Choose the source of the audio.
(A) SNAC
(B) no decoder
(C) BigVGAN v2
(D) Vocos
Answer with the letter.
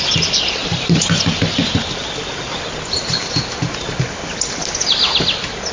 B